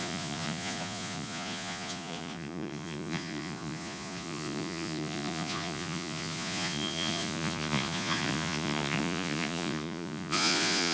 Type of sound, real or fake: fake